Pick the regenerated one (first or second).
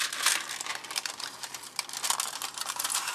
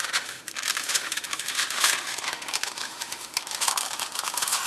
second